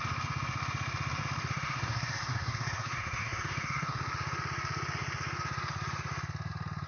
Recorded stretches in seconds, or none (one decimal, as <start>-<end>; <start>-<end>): 0.0-1.4; 4.0-6.9